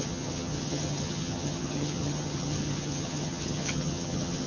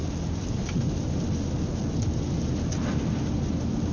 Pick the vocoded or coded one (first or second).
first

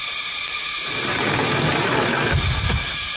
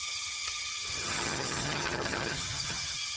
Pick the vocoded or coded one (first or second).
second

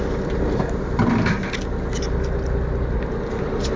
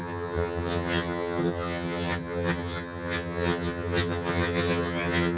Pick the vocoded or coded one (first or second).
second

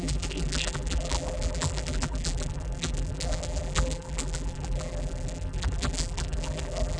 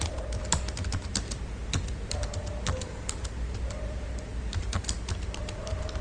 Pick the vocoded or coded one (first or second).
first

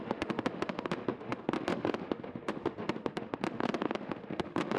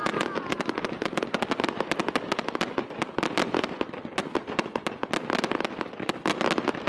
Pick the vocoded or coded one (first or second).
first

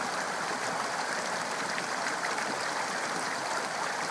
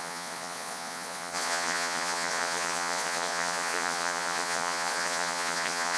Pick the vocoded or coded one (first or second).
second